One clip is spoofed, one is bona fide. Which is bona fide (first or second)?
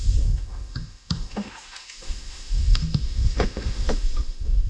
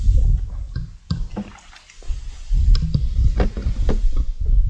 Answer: second